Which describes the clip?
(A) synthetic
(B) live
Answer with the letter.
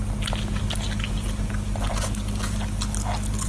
B